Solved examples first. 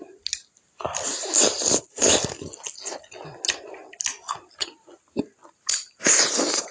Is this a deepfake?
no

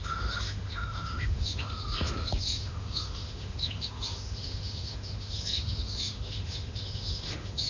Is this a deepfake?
yes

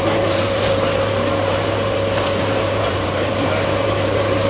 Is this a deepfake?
yes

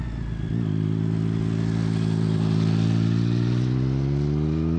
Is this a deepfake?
no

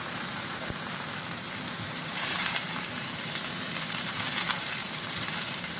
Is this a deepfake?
yes